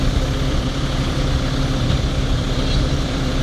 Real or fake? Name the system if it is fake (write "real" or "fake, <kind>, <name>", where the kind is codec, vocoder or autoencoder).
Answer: fake, vocoder, BigVGAN v2